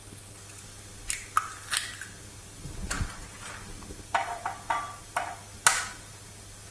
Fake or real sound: real